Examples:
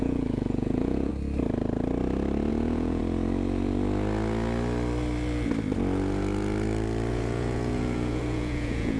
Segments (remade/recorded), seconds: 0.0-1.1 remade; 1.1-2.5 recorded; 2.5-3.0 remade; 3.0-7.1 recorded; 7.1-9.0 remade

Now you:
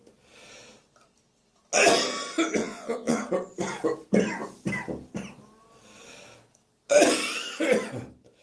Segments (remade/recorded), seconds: 0.0-2.6 recorded; 2.6-3.2 remade; 3.2-8.4 recorded

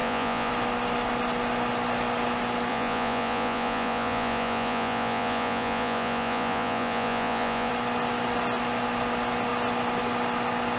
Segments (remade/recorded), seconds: 0.0-0.5 remade; 0.5-2.7 recorded; 2.7-7.7 remade; 7.7-10.8 recorded

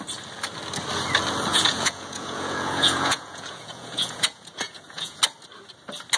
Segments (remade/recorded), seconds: 0.0-1.5 recorded; 1.5-5.2 remade; 5.2-6.2 recorded

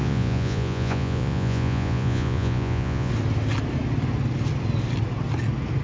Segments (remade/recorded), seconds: 0.0-3.1 remade; 3.1-5.8 recorded